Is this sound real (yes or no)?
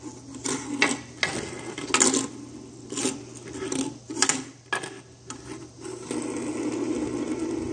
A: yes